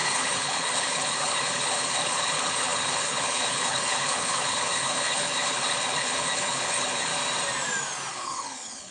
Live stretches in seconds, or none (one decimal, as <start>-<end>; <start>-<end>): 7.1-8.1